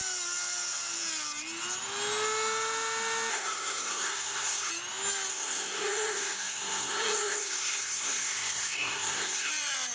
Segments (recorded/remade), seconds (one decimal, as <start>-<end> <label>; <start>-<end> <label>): 0.0-3.3 recorded; 3.3-4.7 remade; 4.7-5.3 recorded; 5.3-9.5 remade; 9.5-9.9 recorded